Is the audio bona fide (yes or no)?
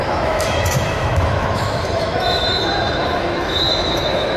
no